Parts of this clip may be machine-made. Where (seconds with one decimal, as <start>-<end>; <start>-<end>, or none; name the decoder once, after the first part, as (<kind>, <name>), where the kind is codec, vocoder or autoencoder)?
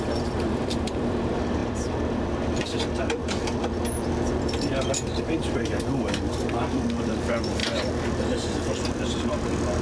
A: 0.0-7.6 (vocoder, BigVGAN v2); 8.7-9.8